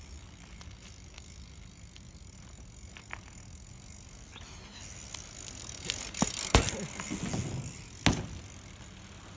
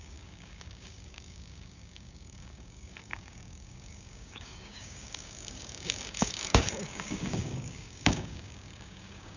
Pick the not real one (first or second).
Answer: second